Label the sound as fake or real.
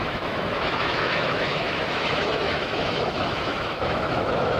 fake